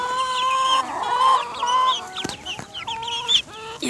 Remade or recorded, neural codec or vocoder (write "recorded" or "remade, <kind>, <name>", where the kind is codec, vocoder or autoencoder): recorded